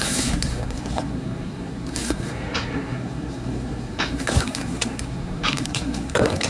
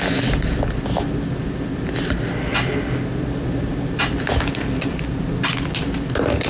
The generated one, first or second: first